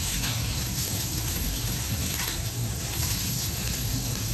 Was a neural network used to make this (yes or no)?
yes